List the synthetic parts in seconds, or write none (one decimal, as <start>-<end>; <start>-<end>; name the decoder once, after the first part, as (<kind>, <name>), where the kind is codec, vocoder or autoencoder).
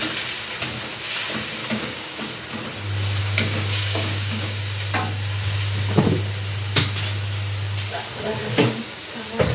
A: 1.6-2.2 (codec, DAC); 3.2-4.6; 8.4-9.0